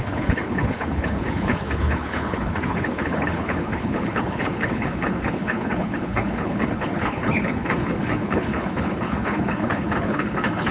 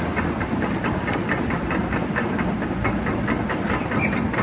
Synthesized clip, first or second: first